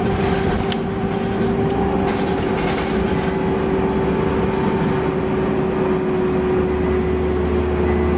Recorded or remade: recorded